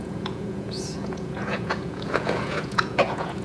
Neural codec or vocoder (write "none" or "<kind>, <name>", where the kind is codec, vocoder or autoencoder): vocoder, Vocos